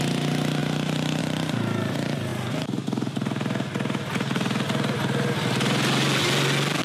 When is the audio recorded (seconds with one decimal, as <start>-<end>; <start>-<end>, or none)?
0.0-6.8